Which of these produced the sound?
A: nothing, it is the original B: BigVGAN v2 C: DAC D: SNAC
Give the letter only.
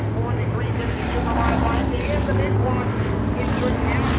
A